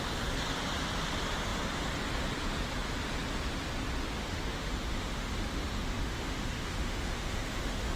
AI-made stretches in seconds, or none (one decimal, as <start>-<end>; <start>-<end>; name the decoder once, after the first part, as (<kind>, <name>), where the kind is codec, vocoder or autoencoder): 4.2-8.0 (autoencoder, DAC-VAE)